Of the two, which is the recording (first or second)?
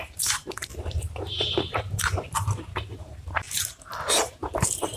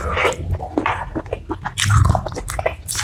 second